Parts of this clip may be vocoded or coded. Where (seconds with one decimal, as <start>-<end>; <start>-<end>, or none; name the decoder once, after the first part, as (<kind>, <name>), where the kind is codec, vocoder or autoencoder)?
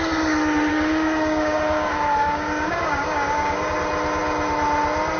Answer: 0.7-3.7 (codec, DAC)